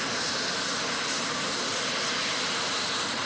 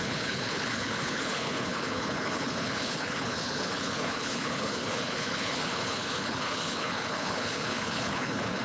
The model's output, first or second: second